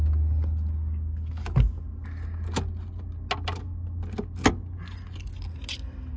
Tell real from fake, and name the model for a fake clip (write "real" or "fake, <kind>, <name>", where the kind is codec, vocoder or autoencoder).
real